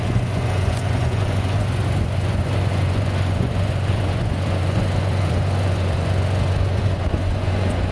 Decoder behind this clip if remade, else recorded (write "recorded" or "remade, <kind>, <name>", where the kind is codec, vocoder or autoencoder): remade, vocoder, Vocos